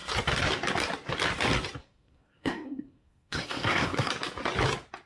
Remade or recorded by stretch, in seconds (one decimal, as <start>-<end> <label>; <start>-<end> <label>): 0.0-1.8 recorded; 1.8-4.1 remade; 4.1-5.1 recorded